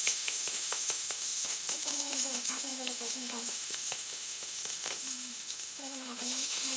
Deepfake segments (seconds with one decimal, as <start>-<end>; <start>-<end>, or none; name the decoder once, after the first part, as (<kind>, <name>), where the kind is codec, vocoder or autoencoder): 0.0-6.8 (autoencoder, DAC-VAE)